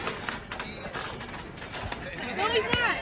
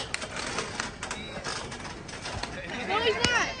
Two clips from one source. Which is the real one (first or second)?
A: second